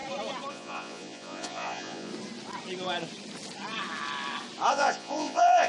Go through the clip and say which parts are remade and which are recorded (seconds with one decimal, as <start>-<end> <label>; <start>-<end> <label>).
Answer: 0.0-0.5 recorded; 0.5-2.1 remade; 2.1-4.7 recorded; 4.7-5.7 remade